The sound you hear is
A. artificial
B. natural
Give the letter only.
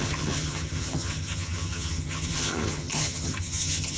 A